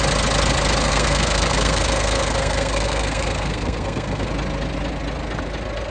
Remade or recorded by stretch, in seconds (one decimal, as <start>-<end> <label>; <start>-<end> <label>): 0.0-0.8 recorded; 0.8-4.3 remade; 4.3-5.9 recorded